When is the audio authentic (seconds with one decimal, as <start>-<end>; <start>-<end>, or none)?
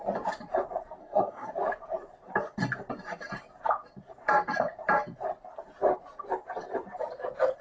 0.0-1.0; 1.5-7.6